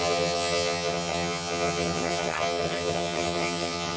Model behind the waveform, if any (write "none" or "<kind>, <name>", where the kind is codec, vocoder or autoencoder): vocoder, HiFi-GAN